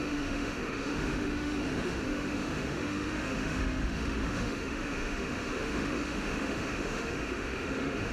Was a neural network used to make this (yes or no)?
yes